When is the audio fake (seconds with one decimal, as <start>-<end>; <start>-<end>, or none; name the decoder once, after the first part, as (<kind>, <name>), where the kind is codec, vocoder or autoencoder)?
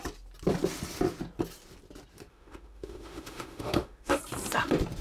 2.3-4.2 (autoencoder, DAC-VAE)